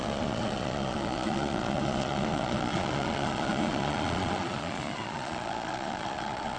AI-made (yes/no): yes